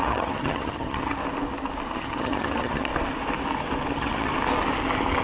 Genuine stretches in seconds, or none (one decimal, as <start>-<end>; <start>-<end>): 1.2-2.0; 2.9-3.9; 4.3-5.2